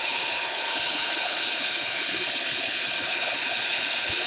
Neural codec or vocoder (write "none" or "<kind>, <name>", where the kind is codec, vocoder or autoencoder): codec, HILCodec